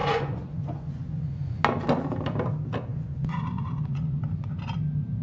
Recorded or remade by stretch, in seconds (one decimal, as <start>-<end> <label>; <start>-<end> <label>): 0.0-1.6 remade; 1.6-2.9 recorded; 2.9-4.2 remade; 4.2-5.2 recorded